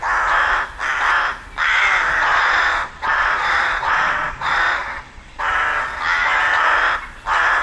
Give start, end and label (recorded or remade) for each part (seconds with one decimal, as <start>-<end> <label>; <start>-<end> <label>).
0.0-2.3 recorded; 2.3-5.4 remade; 5.4-7.6 recorded